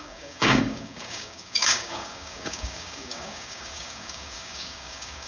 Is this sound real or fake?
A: fake